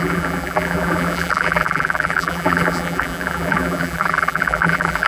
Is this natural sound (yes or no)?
no